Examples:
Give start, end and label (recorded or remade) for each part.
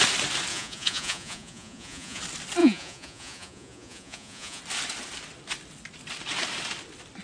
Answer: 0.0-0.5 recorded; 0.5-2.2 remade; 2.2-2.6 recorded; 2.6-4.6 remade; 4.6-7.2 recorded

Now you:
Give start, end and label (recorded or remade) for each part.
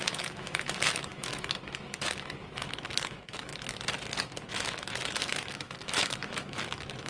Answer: 0.0-3.5 remade; 3.5-4.5 recorded; 4.5-7.1 remade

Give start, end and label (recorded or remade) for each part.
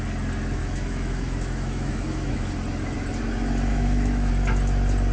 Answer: 0.0-0.6 recorded; 0.6-2.5 remade; 2.5-3.7 recorded; 3.7-4.3 remade; 4.3-5.1 recorded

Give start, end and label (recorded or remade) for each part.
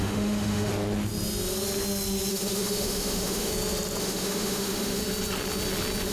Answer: 0.0-0.7 remade; 0.7-2.3 recorded; 2.3-3.5 remade; 3.5-4.0 recorded; 4.0-5.0 remade; 5.0-6.1 recorded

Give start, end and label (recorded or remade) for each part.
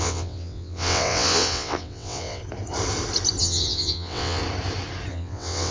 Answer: 0.0-2.4 remade; 2.4-3.4 recorded; 3.4-4.4 remade; 4.4-5.1 recorded; 5.1-5.7 remade